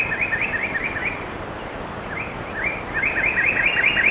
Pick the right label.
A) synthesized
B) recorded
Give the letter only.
A